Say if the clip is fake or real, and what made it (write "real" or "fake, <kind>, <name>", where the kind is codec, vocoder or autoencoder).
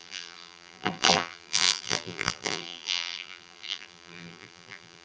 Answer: fake, vocoder, BigVGAN v2